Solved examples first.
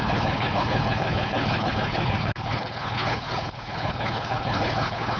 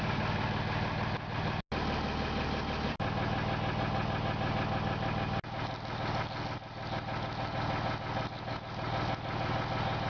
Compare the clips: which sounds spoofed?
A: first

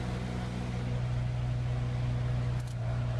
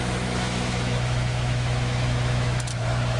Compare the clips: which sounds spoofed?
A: second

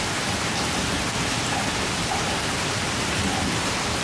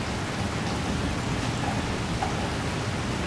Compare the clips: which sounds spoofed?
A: first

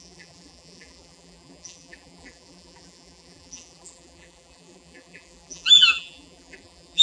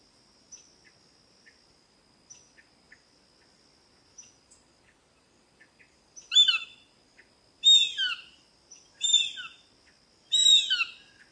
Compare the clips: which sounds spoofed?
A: first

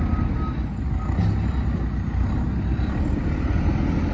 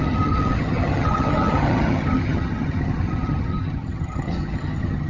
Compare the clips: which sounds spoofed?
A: second